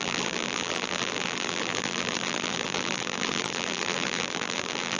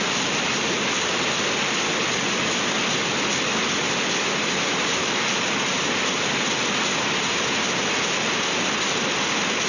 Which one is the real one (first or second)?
second